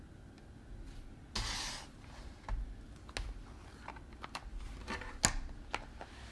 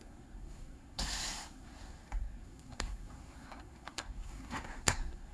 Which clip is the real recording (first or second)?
first